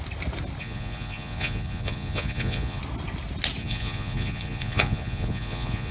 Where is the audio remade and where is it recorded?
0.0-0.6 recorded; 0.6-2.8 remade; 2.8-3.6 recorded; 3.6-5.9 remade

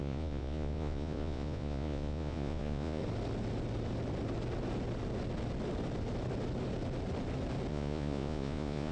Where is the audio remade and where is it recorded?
0.0-3.0 remade; 3.0-7.7 recorded; 7.7-8.9 remade

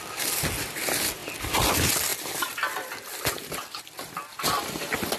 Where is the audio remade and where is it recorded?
0.0-5.2 recorded